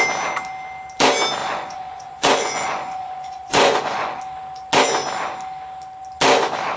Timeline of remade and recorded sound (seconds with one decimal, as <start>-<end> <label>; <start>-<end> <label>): 0.0-1.4 recorded; 1.4-4.2 remade; 4.2-6.8 recorded